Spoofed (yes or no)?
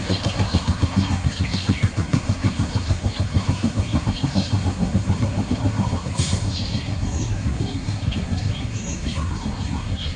yes